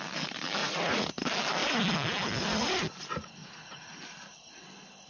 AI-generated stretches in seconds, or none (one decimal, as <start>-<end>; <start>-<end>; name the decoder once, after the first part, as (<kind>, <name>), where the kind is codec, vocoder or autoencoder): 0.6-1.2 (vocoder, Vocos); 3.4-4.0